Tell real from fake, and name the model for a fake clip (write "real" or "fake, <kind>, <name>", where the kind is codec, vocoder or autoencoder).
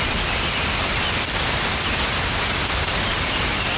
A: real